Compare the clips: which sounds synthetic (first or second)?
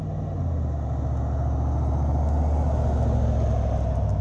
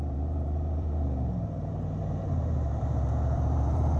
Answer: second